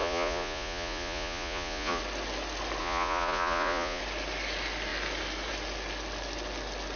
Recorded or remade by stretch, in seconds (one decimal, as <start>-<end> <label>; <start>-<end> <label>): 0.0-2.0 remade; 2.0-2.8 recorded; 2.8-4.0 remade; 4.0-7.0 recorded